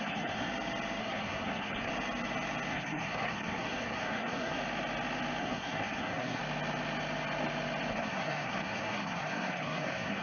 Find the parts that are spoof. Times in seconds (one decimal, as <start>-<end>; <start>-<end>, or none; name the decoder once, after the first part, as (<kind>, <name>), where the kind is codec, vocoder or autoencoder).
0.0-0.5 (codec, SNAC); 1.0-1.9; 2.7-4.6; 5.4-6.4; 7.9-10.2

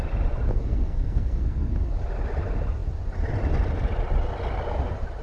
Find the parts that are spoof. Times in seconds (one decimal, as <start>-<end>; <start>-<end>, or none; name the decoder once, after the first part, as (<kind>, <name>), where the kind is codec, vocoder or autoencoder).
0.5-1.9 (codec, SNAC)

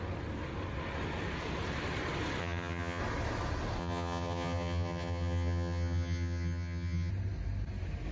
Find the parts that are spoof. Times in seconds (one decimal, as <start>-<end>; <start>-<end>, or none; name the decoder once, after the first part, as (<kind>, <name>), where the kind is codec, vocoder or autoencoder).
2.4-3.0 (vocoder, HiFi-GAN); 3.8-7.1

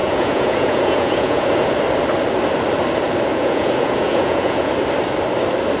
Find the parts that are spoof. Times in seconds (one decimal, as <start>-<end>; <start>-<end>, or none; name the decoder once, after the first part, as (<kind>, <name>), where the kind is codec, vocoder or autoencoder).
0.0-1.4 (vocoder, Vocos); 3.3-4.7

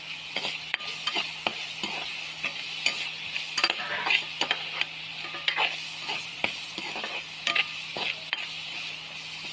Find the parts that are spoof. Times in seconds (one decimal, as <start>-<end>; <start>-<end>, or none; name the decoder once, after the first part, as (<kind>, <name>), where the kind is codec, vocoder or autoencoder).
none

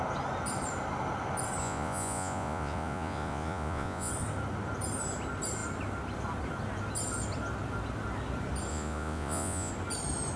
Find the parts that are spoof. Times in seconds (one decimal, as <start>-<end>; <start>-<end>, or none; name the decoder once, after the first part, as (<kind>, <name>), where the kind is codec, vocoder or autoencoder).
1.6-4.1 (vocoder, Vocos); 8.7-9.7

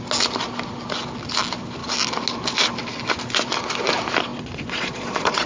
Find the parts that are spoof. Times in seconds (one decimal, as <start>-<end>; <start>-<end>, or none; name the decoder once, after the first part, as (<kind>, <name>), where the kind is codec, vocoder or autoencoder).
4.3-5.5 (vocoder, Vocos)

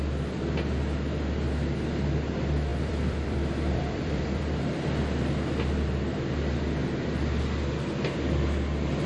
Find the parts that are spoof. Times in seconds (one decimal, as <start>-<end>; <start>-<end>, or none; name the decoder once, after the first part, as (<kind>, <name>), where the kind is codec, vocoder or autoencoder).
2.7-4.7 (vocoder, BigVGAN v2)